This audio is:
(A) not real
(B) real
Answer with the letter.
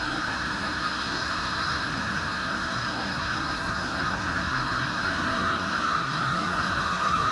A